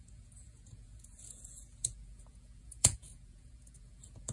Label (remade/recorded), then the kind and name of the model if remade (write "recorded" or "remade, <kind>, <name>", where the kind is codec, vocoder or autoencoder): remade, vocoder, Vocos